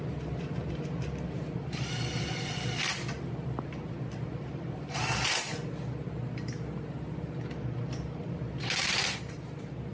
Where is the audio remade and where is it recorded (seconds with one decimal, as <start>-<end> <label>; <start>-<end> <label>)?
0.0-5.5 remade; 5.5-8.3 recorded; 8.3-9.9 remade

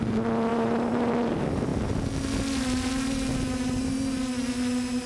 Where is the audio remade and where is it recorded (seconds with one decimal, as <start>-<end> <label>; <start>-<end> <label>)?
0.0-0.5 recorded; 0.5-1.1 remade; 1.1-5.1 recorded

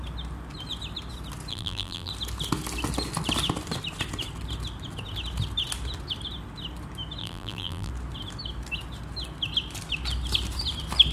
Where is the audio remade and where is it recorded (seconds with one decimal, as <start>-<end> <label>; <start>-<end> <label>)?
0.0-1.5 recorded; 1.5-2.1 remade; 2.1-7.2 recorded; 7.2-7.9 remade; 7.9-11.1 recorded

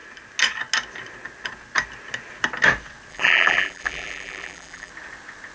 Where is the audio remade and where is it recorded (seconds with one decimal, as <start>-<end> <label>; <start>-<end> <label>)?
0.0-3.1 recorded; 3.1-4.9 remade; 4.9-5.5 recorded

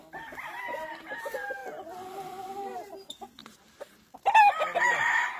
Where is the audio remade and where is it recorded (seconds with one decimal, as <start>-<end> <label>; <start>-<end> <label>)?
0.0-1.0 recorded; 1.0-1.6 remade; 1.6-2.1 recorded; 2.1-3.4 remade; 3.4-5.0 recorded; 5.0-5.4 remade

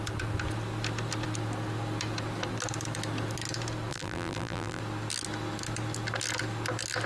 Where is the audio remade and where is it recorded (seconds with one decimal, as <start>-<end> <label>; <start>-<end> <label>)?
0.0-3.9 recorded; 3.9-4.8 remade; 4.8-7.1 recorded

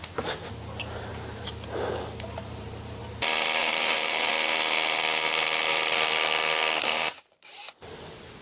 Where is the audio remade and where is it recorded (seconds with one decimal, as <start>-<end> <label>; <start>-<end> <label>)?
0.0-1.1 recorded; 1.1-3.0 remade; 3.0-3.6 recorded; 3.6-4.3 remade; 4.3-7.0 recorded; 7.0-7.7 remade; 7.7-8.4 recorded

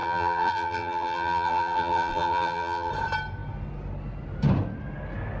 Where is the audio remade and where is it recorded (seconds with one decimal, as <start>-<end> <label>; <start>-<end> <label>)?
0.0-2.9 remade; 2.9-5.4 recorded